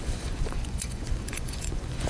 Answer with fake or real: fake